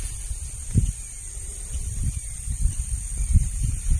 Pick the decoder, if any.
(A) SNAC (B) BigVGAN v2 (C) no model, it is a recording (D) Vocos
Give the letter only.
C